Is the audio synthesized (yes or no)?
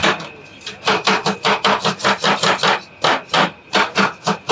no